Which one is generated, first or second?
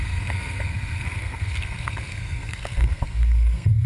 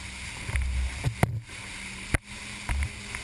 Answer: first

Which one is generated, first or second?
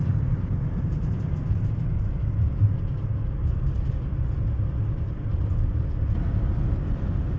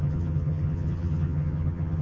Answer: second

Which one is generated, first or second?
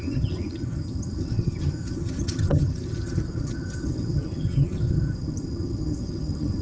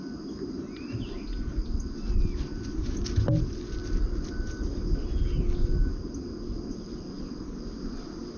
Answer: first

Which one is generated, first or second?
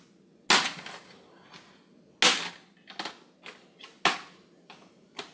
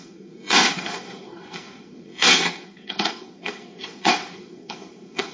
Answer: second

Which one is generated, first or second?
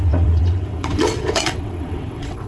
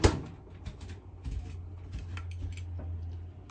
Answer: first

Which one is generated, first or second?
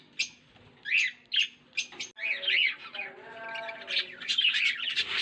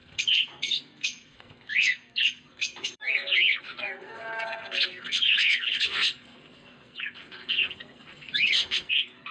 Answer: second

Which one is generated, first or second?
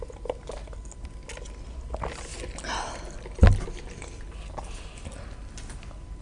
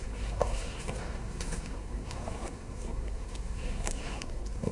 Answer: second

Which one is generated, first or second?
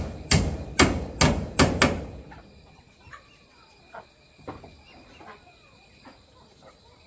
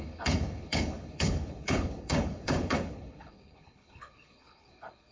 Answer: second